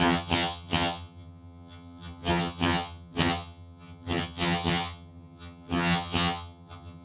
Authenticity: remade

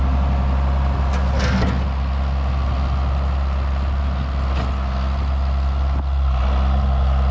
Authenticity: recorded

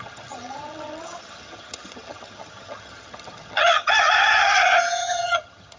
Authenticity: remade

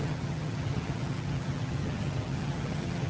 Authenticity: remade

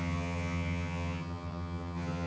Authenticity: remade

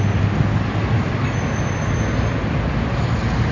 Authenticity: recorded